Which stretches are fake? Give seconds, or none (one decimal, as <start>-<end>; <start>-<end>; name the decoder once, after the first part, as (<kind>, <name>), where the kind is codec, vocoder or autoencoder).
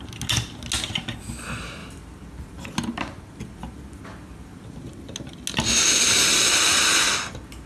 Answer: none